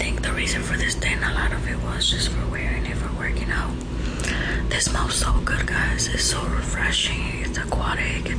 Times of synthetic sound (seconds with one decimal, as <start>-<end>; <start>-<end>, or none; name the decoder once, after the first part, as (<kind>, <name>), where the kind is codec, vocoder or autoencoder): 6.3-7.2 (codec, DAC)